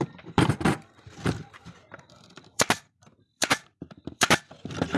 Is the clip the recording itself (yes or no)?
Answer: no